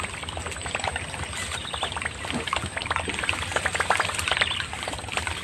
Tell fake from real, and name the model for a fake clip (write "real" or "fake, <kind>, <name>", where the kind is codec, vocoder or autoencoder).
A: real